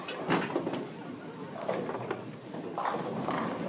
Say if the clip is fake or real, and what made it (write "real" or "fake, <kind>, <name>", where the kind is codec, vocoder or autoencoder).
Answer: real